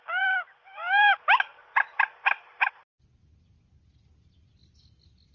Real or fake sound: fake